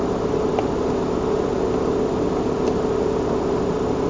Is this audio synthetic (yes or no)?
no